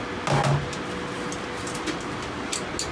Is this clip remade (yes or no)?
no